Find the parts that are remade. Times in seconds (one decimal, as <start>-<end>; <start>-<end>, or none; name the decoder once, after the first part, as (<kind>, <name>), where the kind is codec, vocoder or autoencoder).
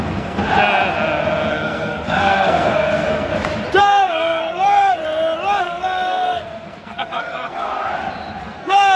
0.0-0.4 (codec, SNAC); 1.5-3.3; 3.8-5.0; 5.6-7.7; 8.4-9.0